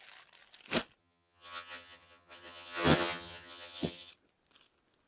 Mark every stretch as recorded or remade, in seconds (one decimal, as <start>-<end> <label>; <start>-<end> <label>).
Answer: 0.0-1.0 recorded; 1.0-4.1 remade; 4.1-5.1 recorded